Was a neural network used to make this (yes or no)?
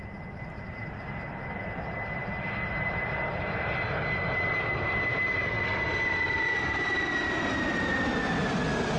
no